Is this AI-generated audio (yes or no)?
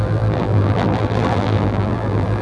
yes